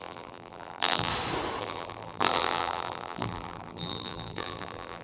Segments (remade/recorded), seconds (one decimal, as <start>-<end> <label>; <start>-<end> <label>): 0.0-1.1 remade; 1.1-1.6 recorded; 1.6-5.0 remade